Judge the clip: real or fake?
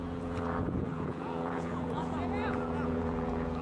fake